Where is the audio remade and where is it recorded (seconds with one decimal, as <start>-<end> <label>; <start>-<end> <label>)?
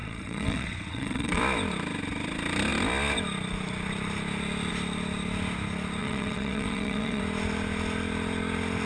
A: 0.0-1.4 remade; 1.4-6.0 recorded; 6.0-7.2 remade; 7.2-8.9 recorded